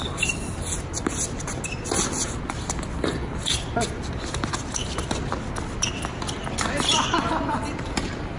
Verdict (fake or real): real